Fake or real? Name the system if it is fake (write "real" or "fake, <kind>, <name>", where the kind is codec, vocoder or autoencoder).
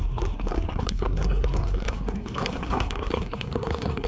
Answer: fake, codec, SNAC